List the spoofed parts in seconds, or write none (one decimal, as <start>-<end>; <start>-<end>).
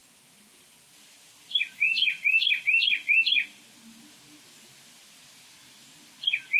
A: none